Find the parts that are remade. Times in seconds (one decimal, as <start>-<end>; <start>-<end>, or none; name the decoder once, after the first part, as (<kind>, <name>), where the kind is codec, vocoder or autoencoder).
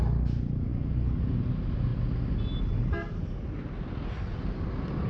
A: none